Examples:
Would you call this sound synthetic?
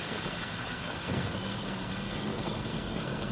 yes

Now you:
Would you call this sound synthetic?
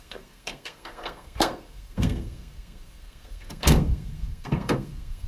yes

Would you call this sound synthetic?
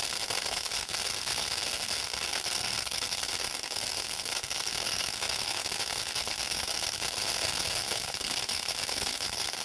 yes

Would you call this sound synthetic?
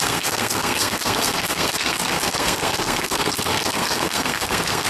yes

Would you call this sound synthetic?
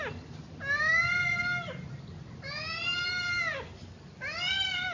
no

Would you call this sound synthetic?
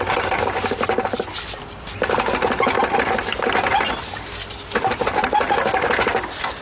no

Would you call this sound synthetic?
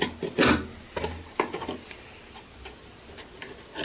no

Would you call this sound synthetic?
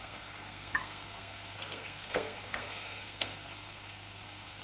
yes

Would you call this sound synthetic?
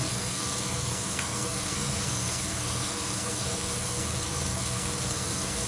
yes